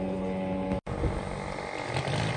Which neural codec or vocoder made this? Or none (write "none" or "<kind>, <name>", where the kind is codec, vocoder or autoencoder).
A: none